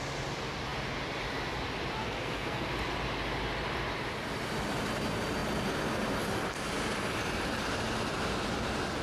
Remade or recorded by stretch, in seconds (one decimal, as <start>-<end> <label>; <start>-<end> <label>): 0.0-2.0 recorded; 2.0-2.7 remade; 2.7-9.0 recorded